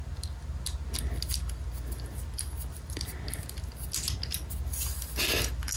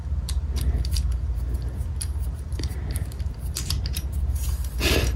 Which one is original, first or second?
first